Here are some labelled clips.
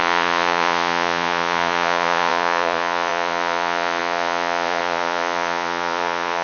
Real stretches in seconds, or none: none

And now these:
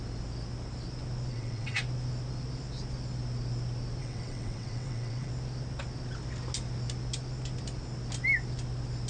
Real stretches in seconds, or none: 0.0-1.3; 1.8-4.0; 5.3-9.1

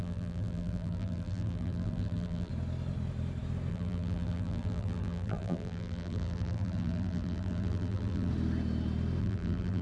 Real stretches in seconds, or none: 2.5-3.7; 8.3-9.2

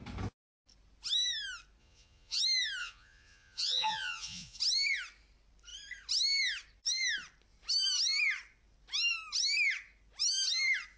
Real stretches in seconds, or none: 0.0-1.8; 2.4-2.8; 4.6-11.0

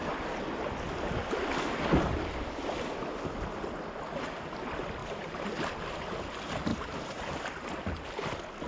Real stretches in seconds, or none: 0.0-5.0; 5.7-6.7; 8.0-8.7

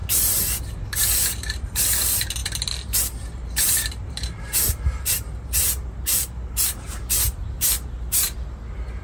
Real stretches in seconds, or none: 0.0-0.6

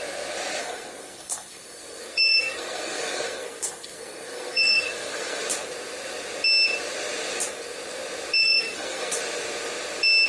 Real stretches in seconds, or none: 0.0-0.6; 5.4-8.4; 9.2-10.3

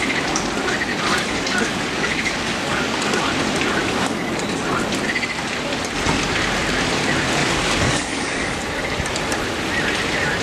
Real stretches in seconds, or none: 0.0-0.9; 3.2-3.8; 4.4-7.4; 8.6-10.4